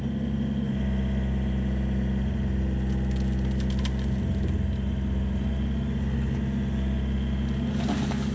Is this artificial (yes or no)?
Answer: no